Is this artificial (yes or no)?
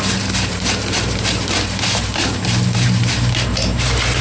yes